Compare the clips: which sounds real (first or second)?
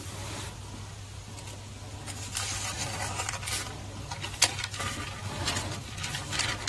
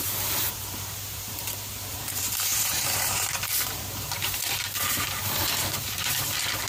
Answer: first